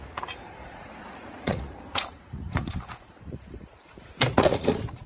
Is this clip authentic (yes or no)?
no